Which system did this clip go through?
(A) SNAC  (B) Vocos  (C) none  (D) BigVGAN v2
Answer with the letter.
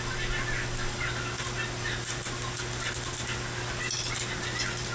C